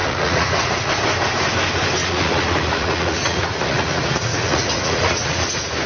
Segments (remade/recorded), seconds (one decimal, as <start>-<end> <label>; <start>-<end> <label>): 0.0-0.9 remade; 0.9-2.0 recorded; 2.0-5.5 remade; 5.5-5.9 recorded